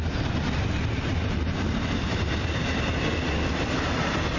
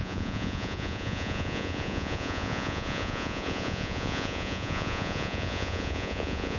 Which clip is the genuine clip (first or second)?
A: first